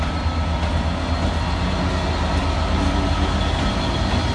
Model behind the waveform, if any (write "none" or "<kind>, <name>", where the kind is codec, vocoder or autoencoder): none